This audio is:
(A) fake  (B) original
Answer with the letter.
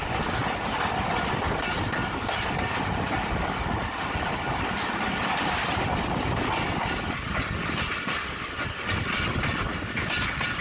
B